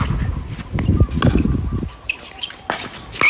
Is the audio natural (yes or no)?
yes